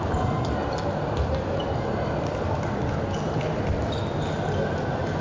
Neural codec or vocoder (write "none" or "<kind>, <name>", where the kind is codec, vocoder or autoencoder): none